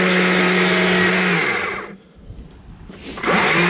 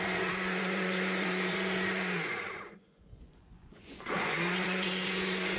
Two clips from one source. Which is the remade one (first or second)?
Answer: second